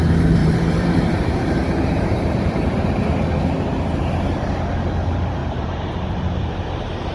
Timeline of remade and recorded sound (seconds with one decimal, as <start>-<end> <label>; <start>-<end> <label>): 0.0-0.4 recorded; 0.4-3.0 remade; 3.0-5.4 recorded; 5.4-6.6 remade; 6.6-7.1 recorded